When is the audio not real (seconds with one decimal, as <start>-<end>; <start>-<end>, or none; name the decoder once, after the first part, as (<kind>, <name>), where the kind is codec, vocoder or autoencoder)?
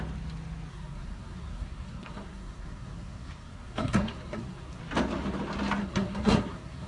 0.7-4.8 (codec, SNAC); 5.8-6.9